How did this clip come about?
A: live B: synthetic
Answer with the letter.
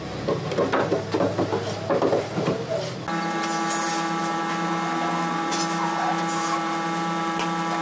A